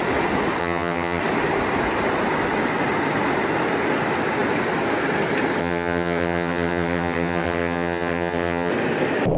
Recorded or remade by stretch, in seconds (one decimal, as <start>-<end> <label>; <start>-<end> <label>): 0.0-0.6 recorded; 0.6-1.2 remade; 1.2-5.6 recorded; 5.6-8.7 remade; 8.7-9.4 recorded